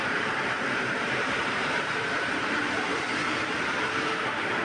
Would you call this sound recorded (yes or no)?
no